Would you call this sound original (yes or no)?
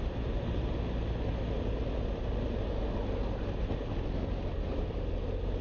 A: yes